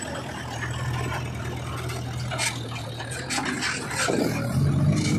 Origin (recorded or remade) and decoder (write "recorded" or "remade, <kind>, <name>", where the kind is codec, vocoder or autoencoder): recorded